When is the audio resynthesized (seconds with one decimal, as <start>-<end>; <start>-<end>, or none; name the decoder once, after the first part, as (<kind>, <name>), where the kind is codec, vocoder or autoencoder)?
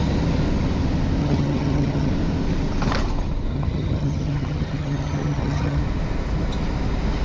1.2-2.1 (vocoder, HiFi-GAN); 3.5-5.8